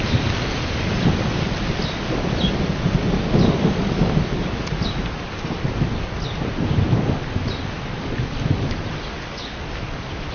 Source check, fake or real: real